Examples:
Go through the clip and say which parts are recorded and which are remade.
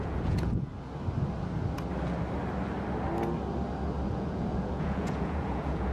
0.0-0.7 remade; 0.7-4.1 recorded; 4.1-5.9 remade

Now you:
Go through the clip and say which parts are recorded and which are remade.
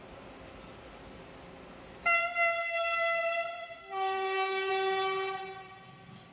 0.0-2.6 recorded; 2.6-3.2 remade; 3.2-3.8 recorded; 3.8-4.7 remade; 4.7-6.3 recorded